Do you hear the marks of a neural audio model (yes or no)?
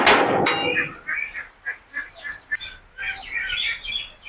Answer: no